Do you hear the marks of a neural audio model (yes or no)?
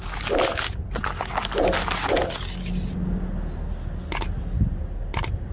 no